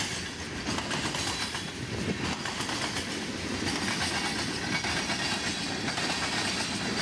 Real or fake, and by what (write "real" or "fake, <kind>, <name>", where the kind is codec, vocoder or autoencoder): real